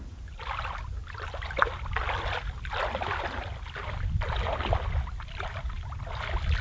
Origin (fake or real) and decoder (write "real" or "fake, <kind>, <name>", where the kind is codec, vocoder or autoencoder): real